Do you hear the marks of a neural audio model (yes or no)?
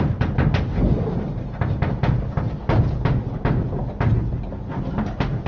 no